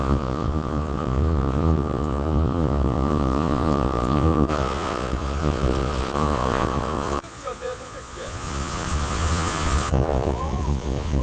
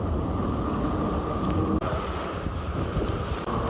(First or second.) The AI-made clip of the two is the first